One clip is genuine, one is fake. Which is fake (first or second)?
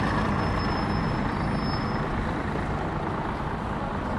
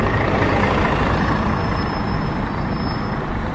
second